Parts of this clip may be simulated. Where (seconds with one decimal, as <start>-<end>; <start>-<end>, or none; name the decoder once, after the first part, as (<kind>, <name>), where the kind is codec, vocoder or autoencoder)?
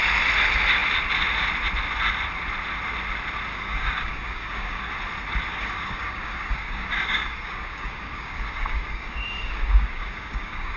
3.5-4.9 (codec, DAC); 5.5-10.8